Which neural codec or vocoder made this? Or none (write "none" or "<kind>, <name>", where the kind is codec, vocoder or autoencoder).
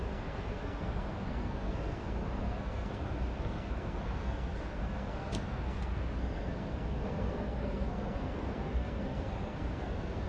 codec, SNAC